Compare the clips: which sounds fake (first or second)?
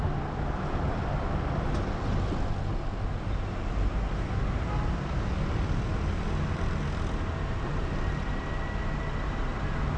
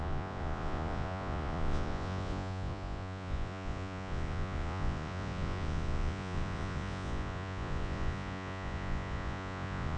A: second